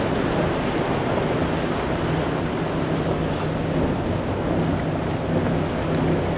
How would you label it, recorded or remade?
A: recorded